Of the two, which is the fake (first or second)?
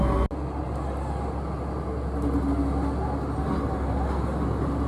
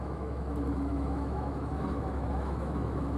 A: second